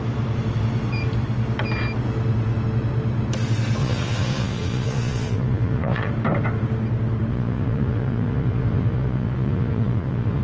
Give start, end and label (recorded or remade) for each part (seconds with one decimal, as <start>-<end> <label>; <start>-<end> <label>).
0.0-3.8 recorded; 3.8-6.1 remade; 6.1-7.3 recorded; 7.3-10.4 remade